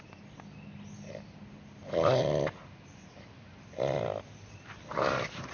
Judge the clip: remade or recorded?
recorded